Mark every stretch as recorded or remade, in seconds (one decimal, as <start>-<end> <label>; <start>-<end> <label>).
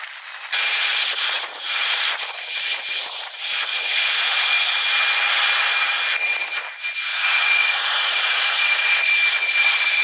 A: 0.0-0.9 recorded; 0.9-4.5 remade; 4.5-7.1 recorded; 7.1-9.1 remade; 9.1-10.0 recorded